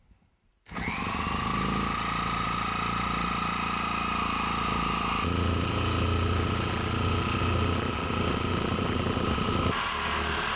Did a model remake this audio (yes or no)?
no